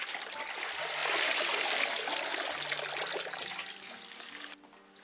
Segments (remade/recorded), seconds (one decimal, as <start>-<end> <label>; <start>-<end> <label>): 0.0-5.0 recorded